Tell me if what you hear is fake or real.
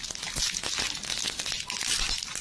real